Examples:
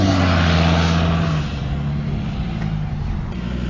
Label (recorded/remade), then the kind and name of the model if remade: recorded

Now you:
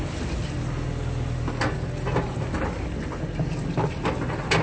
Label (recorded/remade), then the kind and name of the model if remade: recorded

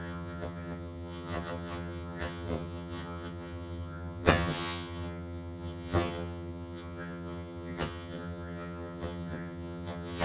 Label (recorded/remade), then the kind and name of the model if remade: remade, vocoder, HiFi-GAN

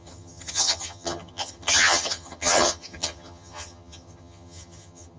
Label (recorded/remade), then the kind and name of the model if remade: remade, vocoder, HiFi-GAN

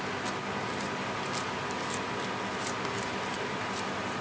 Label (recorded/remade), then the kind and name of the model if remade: recorded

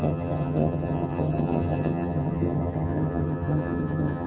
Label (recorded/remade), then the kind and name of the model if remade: remade, vocoder, HiFi-GAN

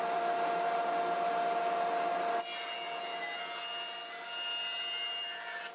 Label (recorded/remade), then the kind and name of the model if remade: recorded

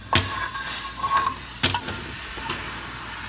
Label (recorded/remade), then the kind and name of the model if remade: recorded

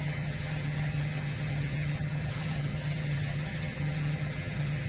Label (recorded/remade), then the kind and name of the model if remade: remade, vocoder, HiFi-GAN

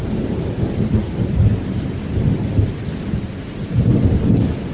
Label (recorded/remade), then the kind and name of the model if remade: recorded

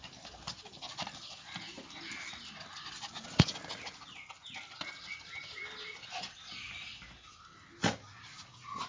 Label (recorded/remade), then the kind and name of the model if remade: recorded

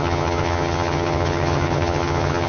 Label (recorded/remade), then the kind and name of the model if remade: remade, vocoder, HiFi-GAN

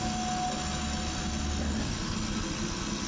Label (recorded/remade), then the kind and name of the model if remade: recorded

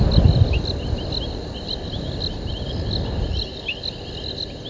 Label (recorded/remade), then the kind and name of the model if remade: recorded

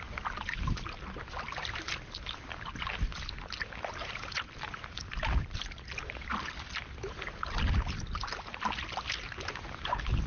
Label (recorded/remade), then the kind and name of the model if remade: recorded